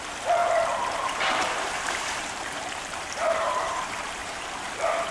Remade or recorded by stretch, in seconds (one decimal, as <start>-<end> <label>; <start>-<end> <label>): 0.0-5.1 remade